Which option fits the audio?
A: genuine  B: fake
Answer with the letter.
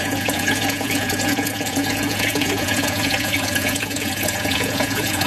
B